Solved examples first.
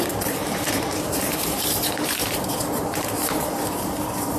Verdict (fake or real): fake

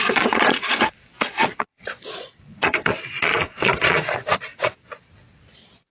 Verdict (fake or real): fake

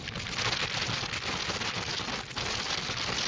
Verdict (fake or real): real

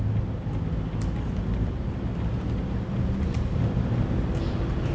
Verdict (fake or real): real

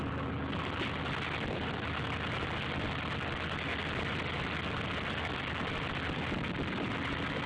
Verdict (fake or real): real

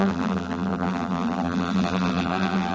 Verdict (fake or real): fake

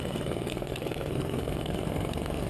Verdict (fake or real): fake